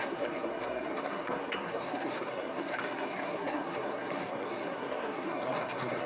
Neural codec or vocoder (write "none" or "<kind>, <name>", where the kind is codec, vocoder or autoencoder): codec, SNAC